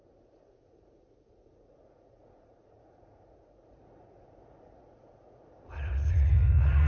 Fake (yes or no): yes